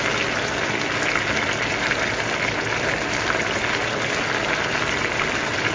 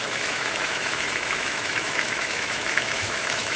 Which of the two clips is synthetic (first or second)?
second